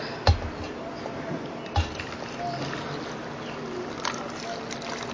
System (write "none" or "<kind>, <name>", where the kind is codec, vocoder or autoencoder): none